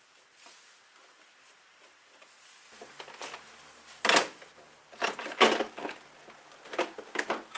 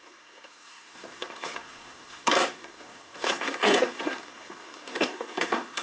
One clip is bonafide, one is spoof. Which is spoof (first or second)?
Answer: second